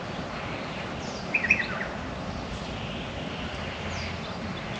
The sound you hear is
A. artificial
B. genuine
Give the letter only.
B